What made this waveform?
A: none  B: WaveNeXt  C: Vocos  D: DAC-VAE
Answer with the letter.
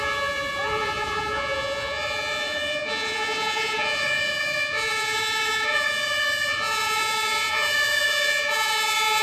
C